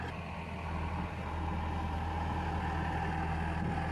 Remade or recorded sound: recorded